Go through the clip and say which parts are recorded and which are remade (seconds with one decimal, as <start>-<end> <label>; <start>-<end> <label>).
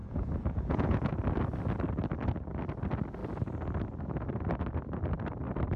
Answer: 0.0-1.1 remade; 1.1-5.8 recorded